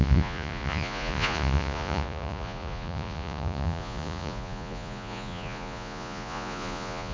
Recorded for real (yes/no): no